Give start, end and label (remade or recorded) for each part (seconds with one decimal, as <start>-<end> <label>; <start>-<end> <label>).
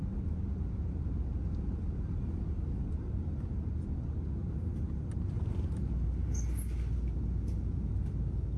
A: 0.0-4.4 recorded; 4.4-5.1 remade; 5.1-8.6 recorded